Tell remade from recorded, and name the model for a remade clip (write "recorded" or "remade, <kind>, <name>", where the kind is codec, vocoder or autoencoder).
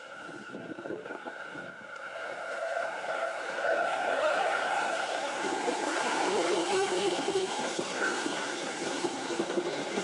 remade, codec, SNAC